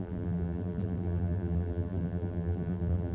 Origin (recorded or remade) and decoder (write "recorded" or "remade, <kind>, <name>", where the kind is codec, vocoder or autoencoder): remade, vocoder, BigVGAN v2